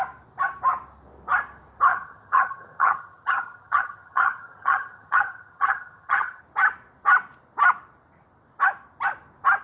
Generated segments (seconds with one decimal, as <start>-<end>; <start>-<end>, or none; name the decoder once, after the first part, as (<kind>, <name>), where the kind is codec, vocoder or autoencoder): 1.9-6.4 (vocoder, HiFi-GAN)